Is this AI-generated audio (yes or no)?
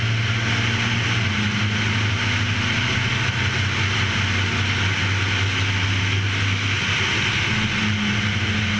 no